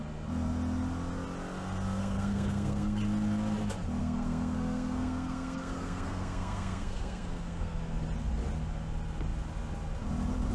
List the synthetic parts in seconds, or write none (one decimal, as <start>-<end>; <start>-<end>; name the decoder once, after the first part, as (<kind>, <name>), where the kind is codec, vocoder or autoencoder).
2.0-3.0 (codec, SNAC); 4.0-7.8